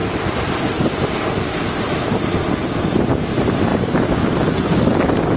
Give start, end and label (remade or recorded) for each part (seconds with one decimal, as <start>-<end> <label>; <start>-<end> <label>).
0.0-3.7 recorded; 3.7-5.0 remade; 5.0-5.4 recorded